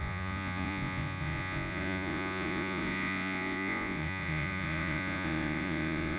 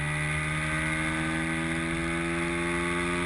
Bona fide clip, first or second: second